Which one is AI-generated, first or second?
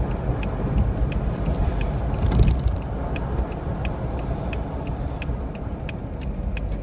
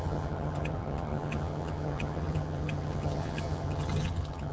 second